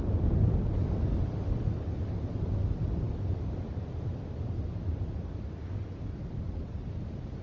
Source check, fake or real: real